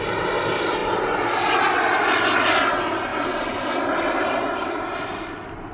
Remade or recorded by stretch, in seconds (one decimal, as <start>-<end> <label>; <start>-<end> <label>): 0.0-3.1 recorded; 3.1-5.7 remade